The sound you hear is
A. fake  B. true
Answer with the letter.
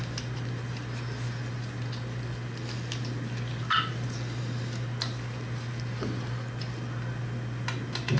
B